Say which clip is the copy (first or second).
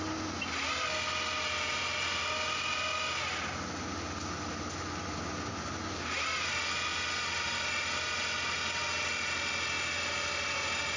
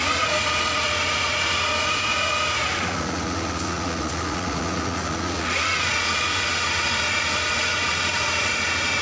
second